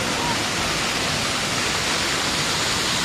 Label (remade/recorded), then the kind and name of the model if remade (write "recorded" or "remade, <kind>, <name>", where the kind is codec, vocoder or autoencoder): recorded